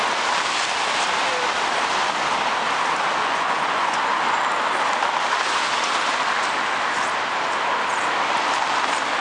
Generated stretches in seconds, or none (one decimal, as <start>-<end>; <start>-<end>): 3.2-4.0